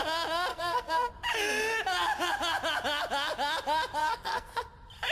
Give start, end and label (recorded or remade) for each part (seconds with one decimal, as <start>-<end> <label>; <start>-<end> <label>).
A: 0.0-0.5 recorded; 0.5-1.1 remade; 1.1-4.0 recorded; 4.0-4.5 remade; 4.5-5.1 recorded